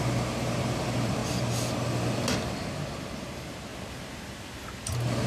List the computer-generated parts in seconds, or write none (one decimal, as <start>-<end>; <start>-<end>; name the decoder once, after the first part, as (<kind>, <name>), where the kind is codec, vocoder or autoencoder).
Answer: 0.0-1.2 (vocoder, BigVGAN v2); 2.9-3.7